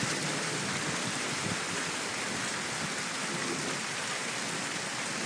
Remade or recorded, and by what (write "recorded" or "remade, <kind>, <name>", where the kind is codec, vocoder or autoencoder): recorded